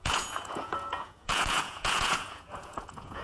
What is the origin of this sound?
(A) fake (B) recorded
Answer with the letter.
A